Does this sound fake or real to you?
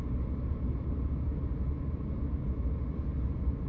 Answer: real